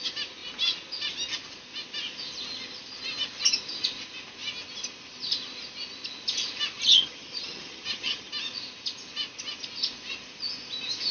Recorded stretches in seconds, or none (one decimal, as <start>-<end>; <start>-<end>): 0.0-6.9; 8.3-11.1